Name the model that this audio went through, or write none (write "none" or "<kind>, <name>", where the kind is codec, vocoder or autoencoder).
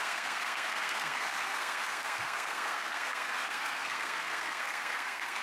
codec, SNAC